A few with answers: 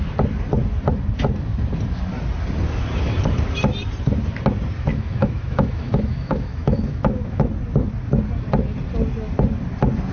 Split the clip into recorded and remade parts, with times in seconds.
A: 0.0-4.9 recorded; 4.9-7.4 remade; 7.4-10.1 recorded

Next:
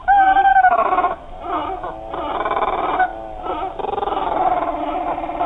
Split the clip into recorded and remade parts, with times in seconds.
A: 0.0-0.5 recorded; 0.5-1.2 remade; 1.2-5.5 recorded

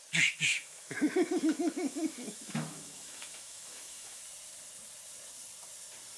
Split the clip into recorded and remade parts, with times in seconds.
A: 0.0-0.5 recorded; 0.5-4.2 remade; 4.2-6.2 recorded

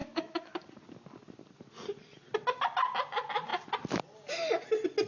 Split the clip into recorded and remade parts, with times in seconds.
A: 0.0-0.6 remade; 0.6-5.1 recorded

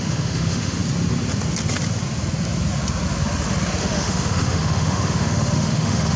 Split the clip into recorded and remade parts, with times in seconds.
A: 0.0-0.8 remade; 0.8-3.8 recorded; 3.8-6.2 remade

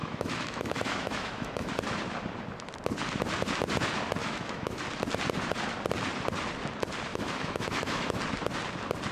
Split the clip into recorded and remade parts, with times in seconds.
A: 0.0-1.7 remade; 1.7-4.2 recorded; 4.2-4.8 remade; 4.8-7.1 recorded; 7.1-8.2 remade; 8.2-9.1 recorded

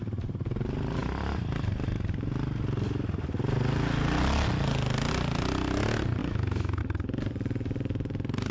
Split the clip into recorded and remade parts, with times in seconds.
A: 0.0-6.2 recorded; 6.2-6.8 remade; 6.8-8.5 recorded